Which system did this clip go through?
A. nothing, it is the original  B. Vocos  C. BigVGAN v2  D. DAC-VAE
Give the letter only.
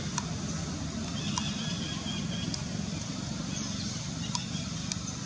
A